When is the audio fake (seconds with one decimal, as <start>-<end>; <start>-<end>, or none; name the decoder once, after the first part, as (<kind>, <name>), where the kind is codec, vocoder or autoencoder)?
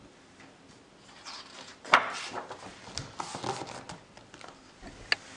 1.7-2.3 (vocoder, BigVGAN v2); 2.7-3.3